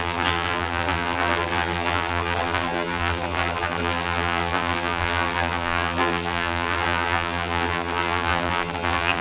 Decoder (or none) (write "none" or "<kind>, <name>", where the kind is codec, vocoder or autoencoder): vocoder, BigVGAN v2